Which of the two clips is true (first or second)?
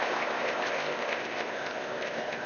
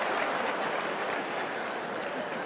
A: second